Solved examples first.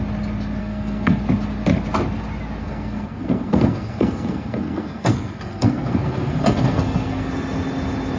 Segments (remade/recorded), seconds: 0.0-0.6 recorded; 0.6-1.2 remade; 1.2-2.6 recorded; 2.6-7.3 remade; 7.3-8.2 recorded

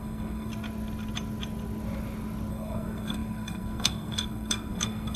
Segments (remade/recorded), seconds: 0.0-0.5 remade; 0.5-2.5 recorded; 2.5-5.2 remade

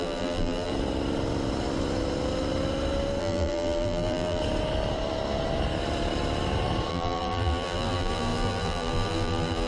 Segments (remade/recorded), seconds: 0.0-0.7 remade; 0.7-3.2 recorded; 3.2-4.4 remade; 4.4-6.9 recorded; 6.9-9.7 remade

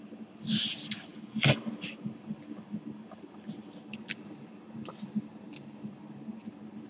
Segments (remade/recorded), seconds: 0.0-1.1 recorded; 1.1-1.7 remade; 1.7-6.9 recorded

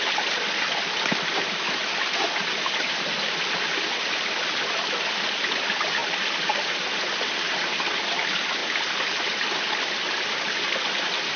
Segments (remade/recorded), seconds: 0.0-11.4 recorded